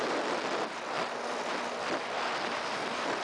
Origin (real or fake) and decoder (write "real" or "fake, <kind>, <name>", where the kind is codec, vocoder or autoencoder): real